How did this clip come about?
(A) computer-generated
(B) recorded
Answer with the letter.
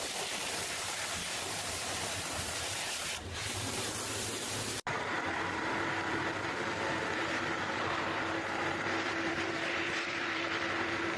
A